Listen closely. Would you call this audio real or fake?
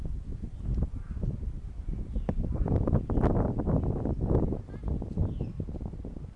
real